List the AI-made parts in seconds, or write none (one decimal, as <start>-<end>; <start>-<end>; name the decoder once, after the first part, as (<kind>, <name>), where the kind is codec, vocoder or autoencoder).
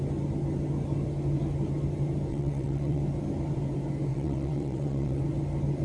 2.3-3.0 (vocoder, WaveNeXt); 4.1-5.2